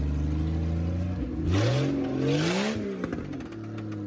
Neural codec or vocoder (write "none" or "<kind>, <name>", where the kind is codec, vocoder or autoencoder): none